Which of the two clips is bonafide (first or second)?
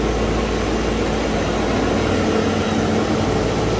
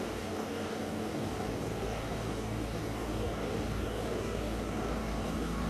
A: first